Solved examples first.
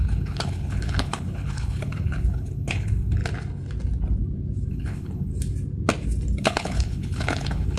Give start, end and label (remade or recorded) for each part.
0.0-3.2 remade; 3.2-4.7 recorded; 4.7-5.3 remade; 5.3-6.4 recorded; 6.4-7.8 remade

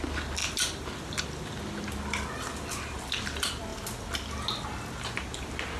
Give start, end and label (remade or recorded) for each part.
0.0-5.8 recorded

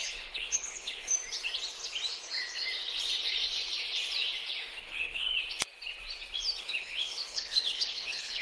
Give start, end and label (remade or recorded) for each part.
0.0-1.1 remade; 1.1-4.8 recorded; 4.8-5.3 remade; 5.3-6.6 recorded; 6.6-8.4 remade

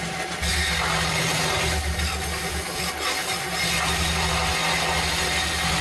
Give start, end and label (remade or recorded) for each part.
0.0-5.8 recorded

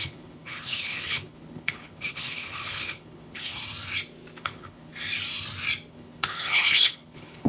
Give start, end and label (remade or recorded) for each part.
0.0-3.6 remade; 3.6-4.4 recorded; 4.4-4.9 remade; 4.9-5.9 recorded; 5.9-7.5 remade

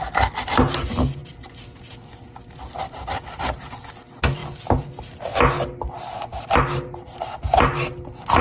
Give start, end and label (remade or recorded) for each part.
0.0-8.4 recorded